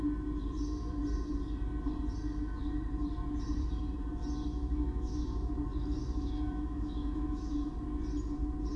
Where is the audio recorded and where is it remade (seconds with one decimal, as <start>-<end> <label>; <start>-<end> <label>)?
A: 0.0-4.5 recorded; 4.5-5.5 remade; 5.5-6.0 recorded; 6.0-7.7 remade; 7.7-8.8 recorded